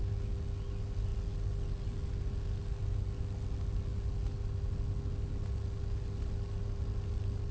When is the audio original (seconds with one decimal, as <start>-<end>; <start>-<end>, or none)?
0.0-7.5